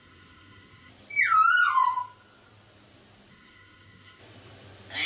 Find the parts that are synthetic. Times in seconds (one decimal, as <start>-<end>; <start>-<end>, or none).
0.0-0.9; 3.3-4.2